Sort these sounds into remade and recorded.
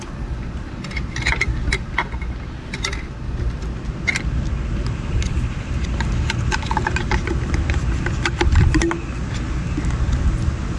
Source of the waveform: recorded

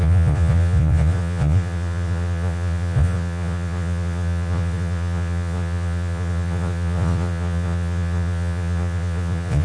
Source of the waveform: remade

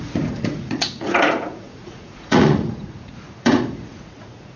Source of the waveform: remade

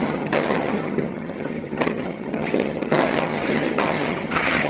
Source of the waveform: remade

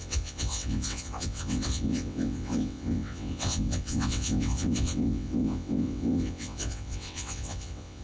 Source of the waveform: remade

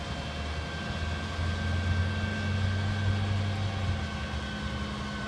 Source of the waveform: recorded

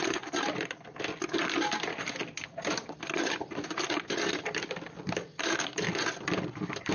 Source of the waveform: recorded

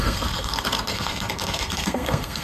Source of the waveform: remade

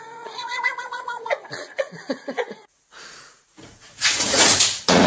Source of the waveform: remade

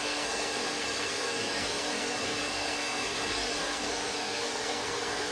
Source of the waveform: remade